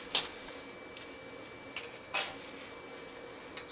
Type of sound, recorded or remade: recorded